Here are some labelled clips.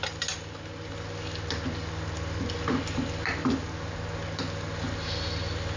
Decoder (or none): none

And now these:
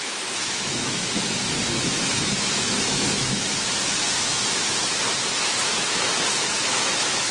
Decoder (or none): autoencoder, DAC-VAE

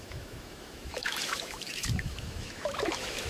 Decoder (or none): autoencoder, DAC-VAE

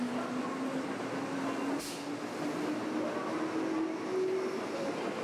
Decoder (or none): none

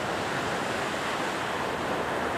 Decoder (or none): none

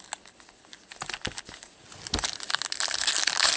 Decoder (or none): none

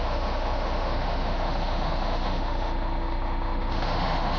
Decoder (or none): autoencoder, DAC-VAE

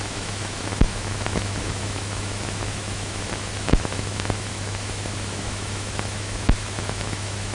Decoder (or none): autoencoder, DAC-VAE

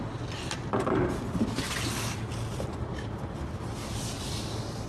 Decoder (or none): none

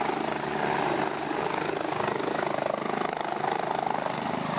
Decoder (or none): none